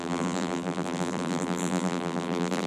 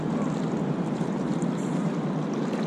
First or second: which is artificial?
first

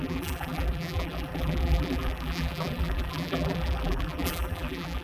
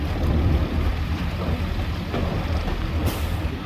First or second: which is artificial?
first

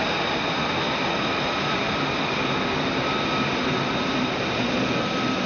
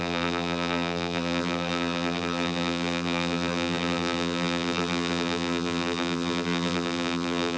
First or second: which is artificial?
second